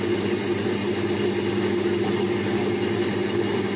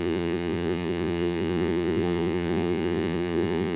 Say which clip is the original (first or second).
first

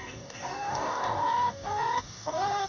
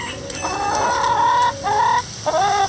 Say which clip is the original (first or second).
second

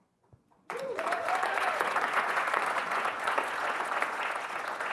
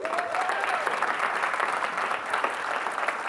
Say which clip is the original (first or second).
second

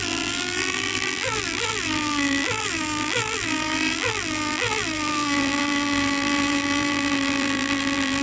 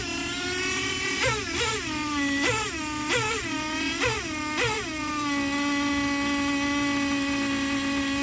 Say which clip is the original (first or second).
second